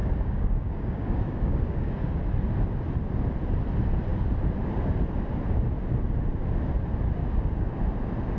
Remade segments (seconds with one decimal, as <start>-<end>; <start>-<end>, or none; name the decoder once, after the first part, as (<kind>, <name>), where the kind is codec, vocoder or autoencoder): 0.0-2.1 (codec, DAC); 7.2-7.8